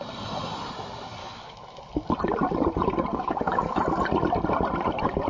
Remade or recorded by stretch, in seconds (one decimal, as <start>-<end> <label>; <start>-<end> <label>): 0.0-1.2 recorded; 1.2-1.8 remade; 1.8-3.1 recorded; 3.1-3.8 remade; 3.8-5.3 recorded